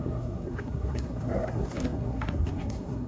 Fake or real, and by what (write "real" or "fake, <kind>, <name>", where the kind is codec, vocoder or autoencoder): fake, codec, SNAC